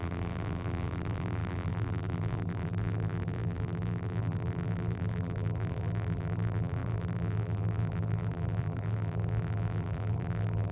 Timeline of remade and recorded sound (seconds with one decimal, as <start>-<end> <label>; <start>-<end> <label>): 0.0-10.7 remade

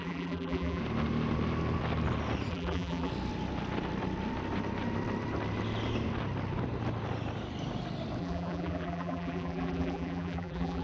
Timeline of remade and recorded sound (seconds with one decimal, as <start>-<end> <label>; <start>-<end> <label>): 0.0-0.8 remade; 0.8-2.5 recorded; 2.5-3.1 remade; 3.1-8.2 recorded; 8.2-10.8 remade

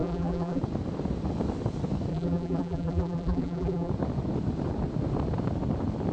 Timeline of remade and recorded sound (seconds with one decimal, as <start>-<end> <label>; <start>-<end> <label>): 0.0-0.6 remade; 0.6-2.1 recorded; 2.1-3.9 remade; 3.9-6.1 recorded

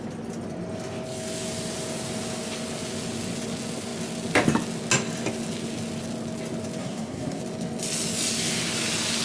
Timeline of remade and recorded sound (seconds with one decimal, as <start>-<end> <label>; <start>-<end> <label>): 0.0-6.8 recorded; 6.8-7.4 remade; 7.4-9.2 recorded

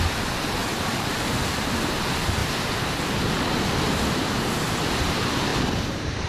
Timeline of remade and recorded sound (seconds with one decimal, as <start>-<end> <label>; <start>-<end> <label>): 0.0-0.6 recorded; 0.6-1.7 remade; 1.7-5.5 recorded; 5.5-6.3 remade